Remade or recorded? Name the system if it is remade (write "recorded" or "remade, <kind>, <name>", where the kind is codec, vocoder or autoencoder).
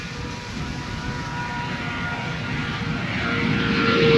recorded